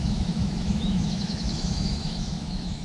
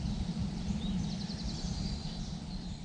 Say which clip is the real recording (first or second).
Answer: second